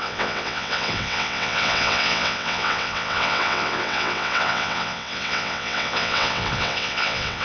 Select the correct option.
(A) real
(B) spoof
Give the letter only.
B